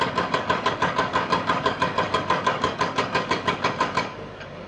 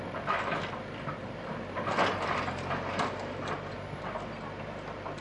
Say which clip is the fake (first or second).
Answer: first